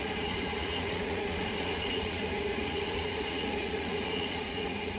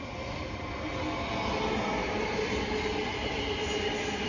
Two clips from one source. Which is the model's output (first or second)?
first